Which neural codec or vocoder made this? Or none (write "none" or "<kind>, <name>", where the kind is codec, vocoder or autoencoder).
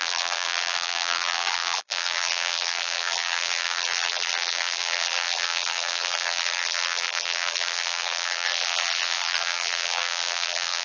vocoder, BigVGAN v2